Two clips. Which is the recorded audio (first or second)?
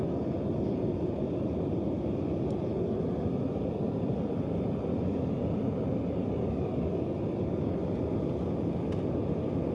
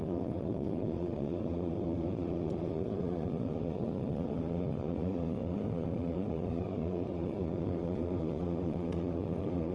first